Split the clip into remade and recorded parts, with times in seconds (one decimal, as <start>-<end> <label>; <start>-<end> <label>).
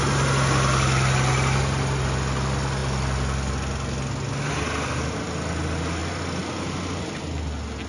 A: 0.0-7.9 recorded